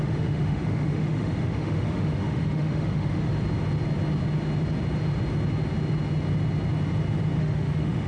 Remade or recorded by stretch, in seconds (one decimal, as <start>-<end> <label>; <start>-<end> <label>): 0.0-3.3 remade; 3.3-7.4 recorded; 7.4-8.1 remade